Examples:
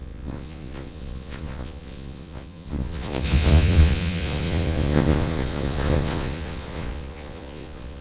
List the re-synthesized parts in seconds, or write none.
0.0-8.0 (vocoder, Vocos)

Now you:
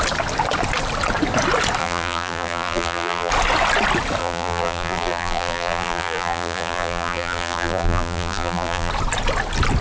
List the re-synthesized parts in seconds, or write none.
1.8-3.3 (vocoder, BigVGAN v2); 4.2-8.9

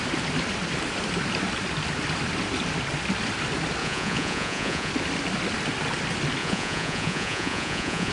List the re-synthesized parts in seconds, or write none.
3.8-4.9 (vocoder, Vocos); 6.4-8.1

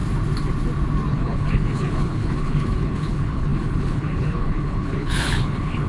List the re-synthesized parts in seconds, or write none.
1.1-5.9 (codec, HILCodec)

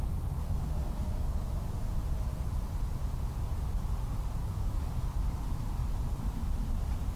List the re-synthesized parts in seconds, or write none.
0.4-1.5 (codec, DAC); 4.4-4.9